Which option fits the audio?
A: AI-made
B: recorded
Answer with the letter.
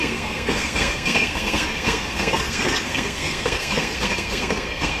A